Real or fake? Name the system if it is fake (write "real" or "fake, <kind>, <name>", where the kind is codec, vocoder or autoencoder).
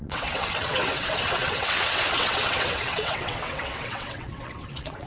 fake, vocoder, WaveNeXt